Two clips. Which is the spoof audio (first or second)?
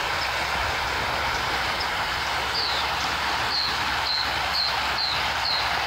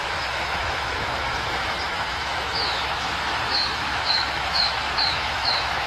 second